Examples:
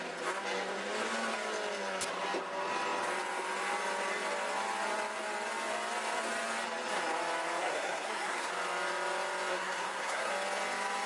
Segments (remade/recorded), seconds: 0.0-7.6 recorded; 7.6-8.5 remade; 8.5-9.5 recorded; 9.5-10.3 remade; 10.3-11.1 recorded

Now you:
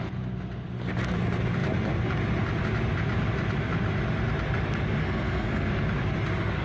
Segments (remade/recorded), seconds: 0.0-5.0 recorded; 5.0-5.7 remade; 5.7-6.6 recorded